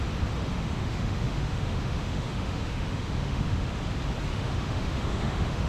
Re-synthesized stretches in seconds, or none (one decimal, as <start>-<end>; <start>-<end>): 0.4-3.8; 4.3-5.7